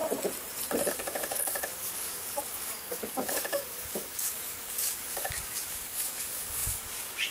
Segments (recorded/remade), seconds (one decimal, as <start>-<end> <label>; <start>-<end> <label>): 0.0-0.9 recorded; 0.9-7.3 remade